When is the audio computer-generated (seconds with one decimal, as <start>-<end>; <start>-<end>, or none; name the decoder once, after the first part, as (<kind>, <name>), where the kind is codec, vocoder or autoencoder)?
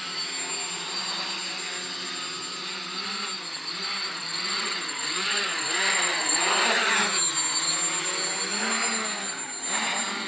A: 4.1-6.4 (vocoder, Vocos)